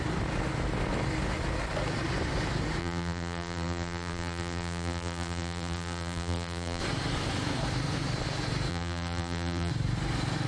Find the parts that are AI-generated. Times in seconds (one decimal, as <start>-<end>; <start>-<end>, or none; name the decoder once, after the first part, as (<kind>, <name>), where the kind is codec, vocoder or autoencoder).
2.8-6.8 (vocoder, BigVGAN v2); 8.7-9.7